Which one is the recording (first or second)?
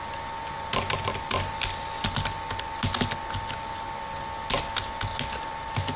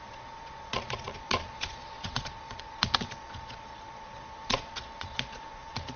first